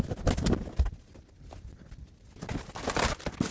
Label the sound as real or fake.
real